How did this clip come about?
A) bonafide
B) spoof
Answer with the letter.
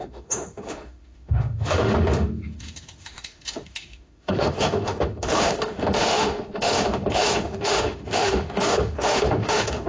B